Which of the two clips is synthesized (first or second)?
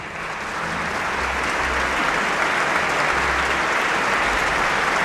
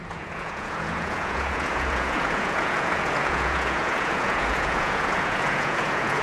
second